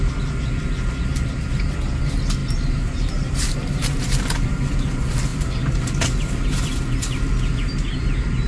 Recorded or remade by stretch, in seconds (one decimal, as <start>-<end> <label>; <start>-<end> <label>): 0.0-2.4 recorded; 2.4-4.2 remade; 4.2-8.5 recorded